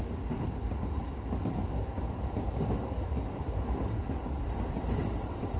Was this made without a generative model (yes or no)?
yes